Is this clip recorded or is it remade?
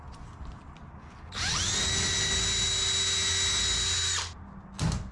recorded